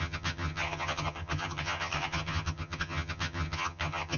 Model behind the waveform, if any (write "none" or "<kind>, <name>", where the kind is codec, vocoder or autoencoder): vocoder, HiFi-GAN